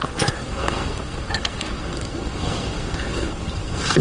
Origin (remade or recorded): remade